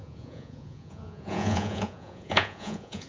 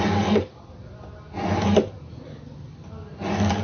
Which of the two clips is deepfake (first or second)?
first